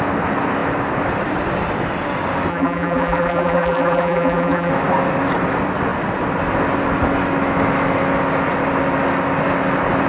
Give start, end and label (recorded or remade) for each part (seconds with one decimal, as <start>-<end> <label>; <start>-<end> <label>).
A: 0.0-2.5 recorded; 2.5-4.7 remade; 4.7-10.1 recorded